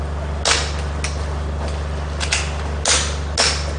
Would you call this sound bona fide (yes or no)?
yes